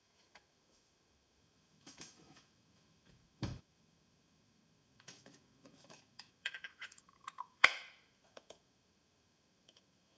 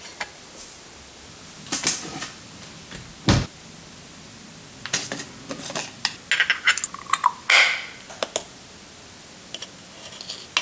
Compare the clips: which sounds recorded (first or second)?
second